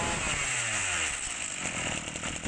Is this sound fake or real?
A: real